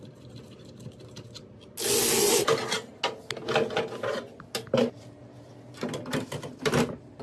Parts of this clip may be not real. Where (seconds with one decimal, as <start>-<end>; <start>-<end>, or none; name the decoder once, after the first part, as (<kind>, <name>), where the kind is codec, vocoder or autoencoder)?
none